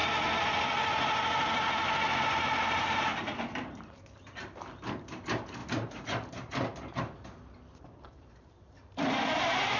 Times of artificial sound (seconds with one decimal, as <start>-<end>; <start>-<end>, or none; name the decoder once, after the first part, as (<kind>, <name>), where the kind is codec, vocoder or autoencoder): 3.1-4.0 (vocoder, BigVGAN v2); 5.6-9.0